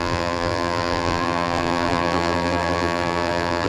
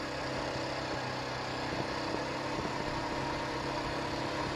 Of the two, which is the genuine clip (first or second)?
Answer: second